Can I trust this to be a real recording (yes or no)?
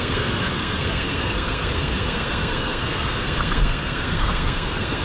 no